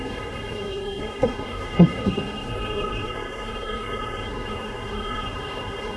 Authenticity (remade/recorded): remade